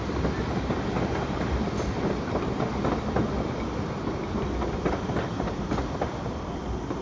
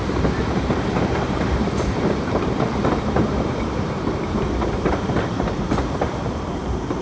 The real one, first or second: first